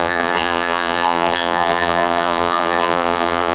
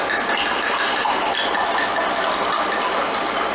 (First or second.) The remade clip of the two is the first